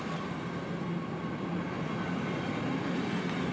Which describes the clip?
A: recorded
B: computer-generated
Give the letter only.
A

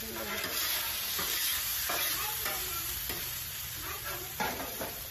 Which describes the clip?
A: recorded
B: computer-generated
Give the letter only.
B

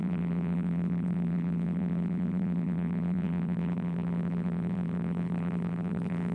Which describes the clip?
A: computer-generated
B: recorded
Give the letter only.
A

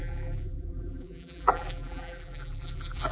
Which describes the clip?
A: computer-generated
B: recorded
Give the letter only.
A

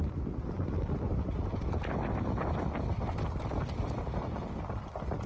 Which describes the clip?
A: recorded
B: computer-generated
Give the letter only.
A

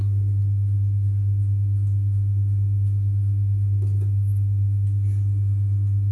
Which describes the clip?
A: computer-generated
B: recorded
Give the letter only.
B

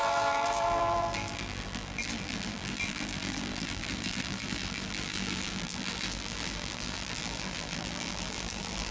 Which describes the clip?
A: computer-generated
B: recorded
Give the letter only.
A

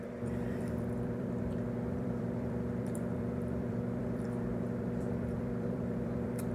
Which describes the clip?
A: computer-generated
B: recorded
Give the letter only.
A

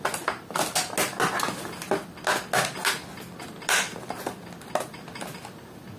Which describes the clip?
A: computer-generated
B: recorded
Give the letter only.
B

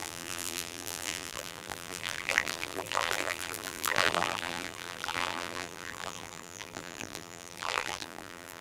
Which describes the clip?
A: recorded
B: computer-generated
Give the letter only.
B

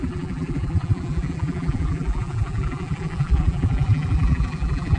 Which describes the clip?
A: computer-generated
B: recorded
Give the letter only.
A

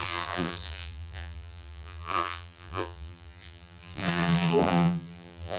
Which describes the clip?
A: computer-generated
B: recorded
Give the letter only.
A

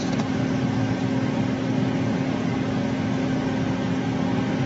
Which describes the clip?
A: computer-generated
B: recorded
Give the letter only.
B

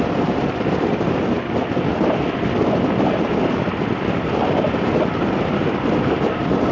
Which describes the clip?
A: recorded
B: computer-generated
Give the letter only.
B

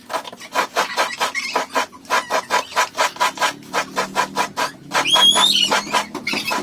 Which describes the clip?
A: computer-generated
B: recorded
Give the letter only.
B